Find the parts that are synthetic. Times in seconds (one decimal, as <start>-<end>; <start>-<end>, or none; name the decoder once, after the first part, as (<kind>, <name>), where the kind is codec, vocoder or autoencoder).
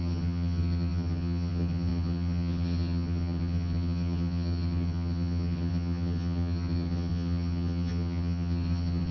0.0-9.1 (vocoder, HiFi-GAN)